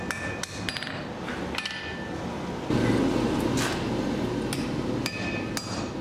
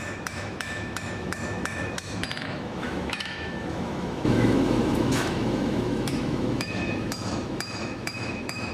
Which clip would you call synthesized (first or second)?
second